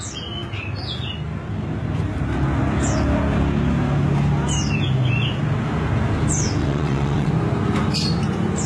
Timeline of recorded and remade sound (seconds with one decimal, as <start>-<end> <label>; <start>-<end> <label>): 0.0-6.6 recorded; 6.6-7.3 remade; 7.3-8.7 recorded